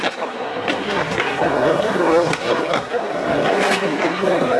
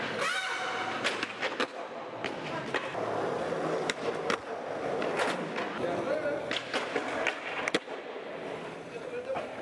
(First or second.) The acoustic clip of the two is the second